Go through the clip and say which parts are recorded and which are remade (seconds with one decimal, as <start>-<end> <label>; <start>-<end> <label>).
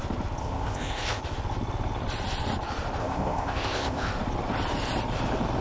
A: 0.0-0.4 recorded; 0.4-1.2 remade; 1.2-3.0 recorded; 3.0-4.1 remade; 4.1-5.6 recorded